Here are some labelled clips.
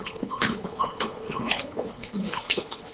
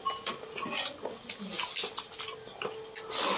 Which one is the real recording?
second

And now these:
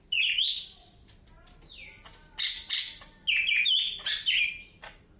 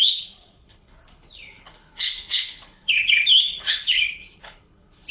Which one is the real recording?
first